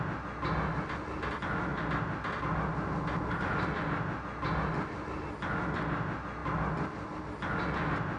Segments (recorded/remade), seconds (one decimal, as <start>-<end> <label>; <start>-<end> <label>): 0.0-8.2 recorded